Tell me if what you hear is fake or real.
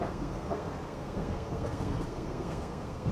fake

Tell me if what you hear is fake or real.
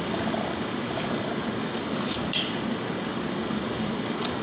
fake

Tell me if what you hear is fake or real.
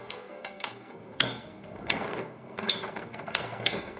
fake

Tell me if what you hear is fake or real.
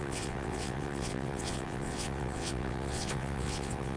fake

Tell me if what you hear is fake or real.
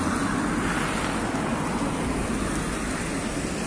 real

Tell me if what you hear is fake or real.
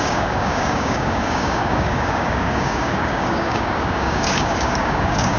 fake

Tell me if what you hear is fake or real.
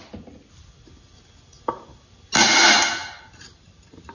real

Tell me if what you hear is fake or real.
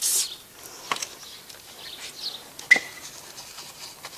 real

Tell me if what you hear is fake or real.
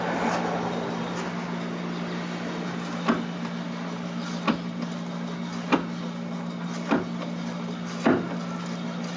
real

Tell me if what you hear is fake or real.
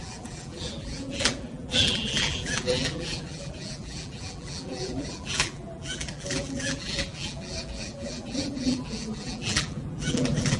fake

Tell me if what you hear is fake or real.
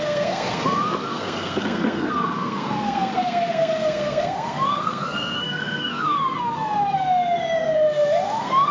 fake